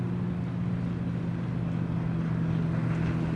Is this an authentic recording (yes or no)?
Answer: yes